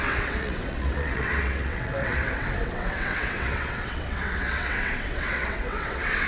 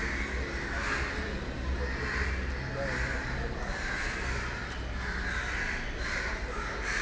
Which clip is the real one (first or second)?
second